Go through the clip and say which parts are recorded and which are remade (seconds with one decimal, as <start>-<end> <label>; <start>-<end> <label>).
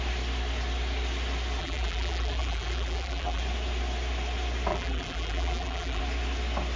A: 0.0-1.6 recorded; 1.6-3.4 remade; 3.4-4.7 recorded; 4.7-6.0 remade; 6.0-6.8 recorded